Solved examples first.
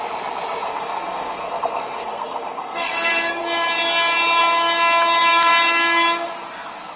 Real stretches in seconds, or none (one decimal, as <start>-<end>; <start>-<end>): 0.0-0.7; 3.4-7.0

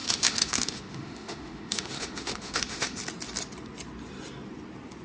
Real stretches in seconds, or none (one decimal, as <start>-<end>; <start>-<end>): 3.0-5.0

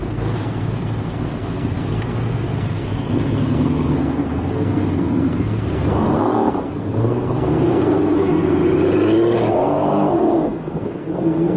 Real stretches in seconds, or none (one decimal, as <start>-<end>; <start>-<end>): 8.6-9.5

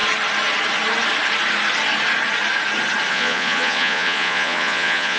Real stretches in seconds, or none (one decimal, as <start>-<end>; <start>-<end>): 0.0-3.1